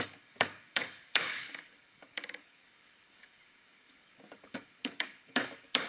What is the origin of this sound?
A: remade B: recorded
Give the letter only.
A